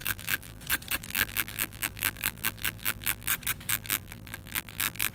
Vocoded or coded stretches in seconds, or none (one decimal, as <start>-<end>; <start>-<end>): 0.0-0.6; 1.0-3.3; 3.7-5.1

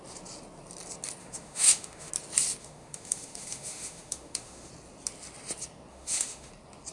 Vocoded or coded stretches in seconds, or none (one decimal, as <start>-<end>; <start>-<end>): 1.2-2.1; 2.6-4.7; 5.9-6.5

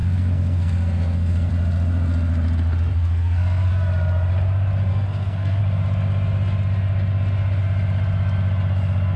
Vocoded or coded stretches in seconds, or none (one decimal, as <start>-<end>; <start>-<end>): 0.0-1.5; 2.9-3.7; 4.9-5.6

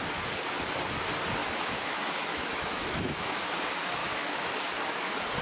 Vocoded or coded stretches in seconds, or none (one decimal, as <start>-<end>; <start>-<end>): 1.4-3.5; 4.0-4.7

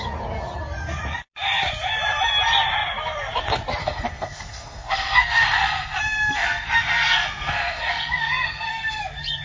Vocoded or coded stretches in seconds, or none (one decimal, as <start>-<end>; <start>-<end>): 3.8-9.0

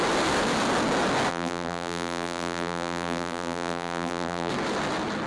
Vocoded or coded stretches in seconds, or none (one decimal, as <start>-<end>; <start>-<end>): 1.3-4.5

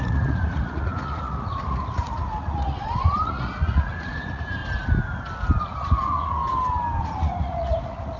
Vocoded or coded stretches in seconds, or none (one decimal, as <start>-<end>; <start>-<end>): 0.0-4.6; 5.6-6.4; 7.0-8.2